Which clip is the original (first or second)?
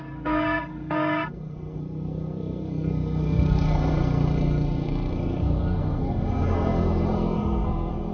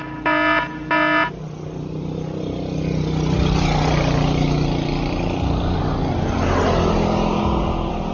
second